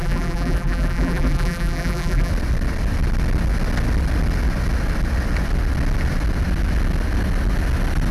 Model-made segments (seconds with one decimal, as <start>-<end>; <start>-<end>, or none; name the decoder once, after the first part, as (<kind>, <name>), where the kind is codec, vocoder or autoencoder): 0.0-2.3 (vocoder, BigVGAN v2)

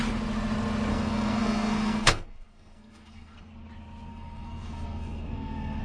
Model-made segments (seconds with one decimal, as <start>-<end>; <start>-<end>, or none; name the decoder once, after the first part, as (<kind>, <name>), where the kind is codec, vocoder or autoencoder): 0.9-3.5 (codec, SNAC); 4.1-5.8

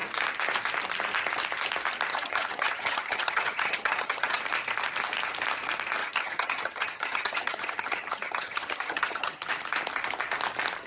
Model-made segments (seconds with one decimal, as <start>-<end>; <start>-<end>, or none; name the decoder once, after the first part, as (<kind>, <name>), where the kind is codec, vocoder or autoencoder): 2.1-4.4 (vocoder, HiFi-GAN); 6.0-9.5

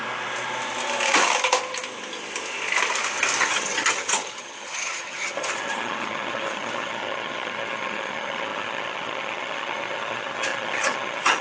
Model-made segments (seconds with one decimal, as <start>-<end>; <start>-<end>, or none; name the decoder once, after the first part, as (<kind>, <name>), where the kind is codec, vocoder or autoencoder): 3.4-11.4 (vocoder, HiFi-GAN)